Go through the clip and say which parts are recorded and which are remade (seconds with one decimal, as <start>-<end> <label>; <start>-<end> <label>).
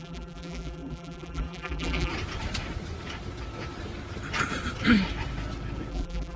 0.0-2.1 remade; 2.1-5.9 recorded; 5.9-6.4 remade